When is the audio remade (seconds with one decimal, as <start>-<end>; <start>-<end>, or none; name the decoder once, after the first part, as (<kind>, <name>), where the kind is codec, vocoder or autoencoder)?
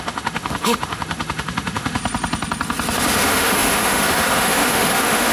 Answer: 0.0-2.0 (autoencoder, DAC-VAE); 3.0-5.3